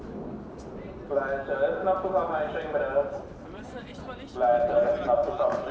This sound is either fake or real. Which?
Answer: fake